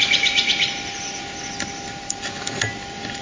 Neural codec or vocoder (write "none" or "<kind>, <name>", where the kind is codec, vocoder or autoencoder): none